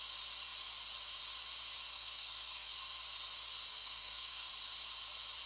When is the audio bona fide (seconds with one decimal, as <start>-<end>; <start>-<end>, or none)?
0.0-1.9; 2.7-3.7; 4.5-5.5

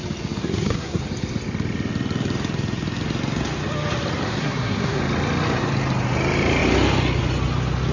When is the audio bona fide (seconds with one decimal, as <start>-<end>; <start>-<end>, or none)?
0.0-0.4; 1.0-4.4; 5.0-7.9

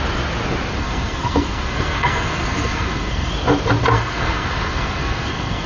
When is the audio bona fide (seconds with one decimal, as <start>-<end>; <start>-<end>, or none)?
0.0-0.8; 3.3-3.8

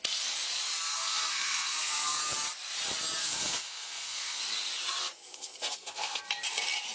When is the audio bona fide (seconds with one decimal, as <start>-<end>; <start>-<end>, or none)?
0.0-0.9; 2.2-3.2; 4.4-5.0; 6.2-6.9

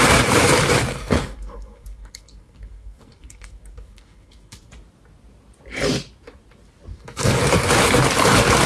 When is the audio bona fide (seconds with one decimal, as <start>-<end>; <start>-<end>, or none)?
0.0-0.9; 4.7-6.9; 7.4-8.7

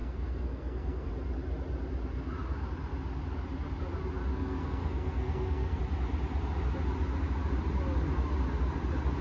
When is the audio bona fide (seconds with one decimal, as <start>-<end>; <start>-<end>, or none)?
1.1-4.3; 5.8-9.2